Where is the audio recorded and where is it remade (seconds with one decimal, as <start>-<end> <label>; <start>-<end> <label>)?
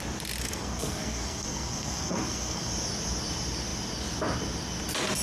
0.0-0.4 recorded; 0.4-2.7 remade; 2.7-5.2 recorded